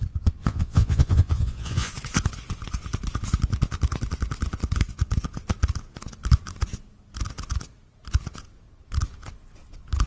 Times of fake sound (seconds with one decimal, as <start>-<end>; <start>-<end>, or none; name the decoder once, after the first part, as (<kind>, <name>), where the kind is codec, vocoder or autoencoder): 0.5-1.9 (vocoder, Vocos)